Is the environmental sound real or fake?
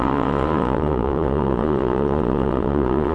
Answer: fake